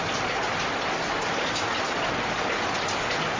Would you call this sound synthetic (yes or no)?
no